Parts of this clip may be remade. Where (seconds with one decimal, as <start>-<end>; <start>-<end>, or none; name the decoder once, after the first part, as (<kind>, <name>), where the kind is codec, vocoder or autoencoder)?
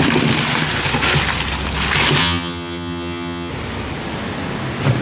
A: 2.2-3.5 (vocoder, HiFi-GAN)